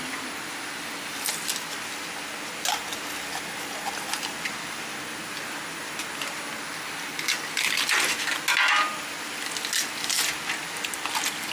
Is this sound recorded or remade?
recorded